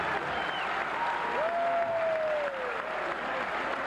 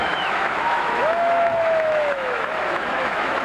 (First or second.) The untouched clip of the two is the first